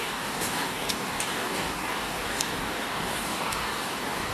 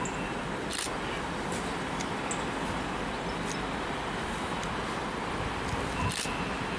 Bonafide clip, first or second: second